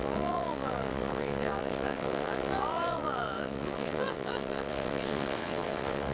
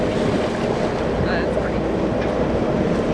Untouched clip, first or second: second